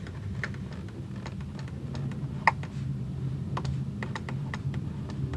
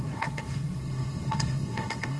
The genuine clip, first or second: first